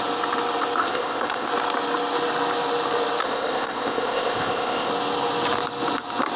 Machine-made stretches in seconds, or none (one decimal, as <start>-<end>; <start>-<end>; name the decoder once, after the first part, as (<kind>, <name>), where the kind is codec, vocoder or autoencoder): 0.8-1.5 (codec, ZipCodec); 3.2-4.9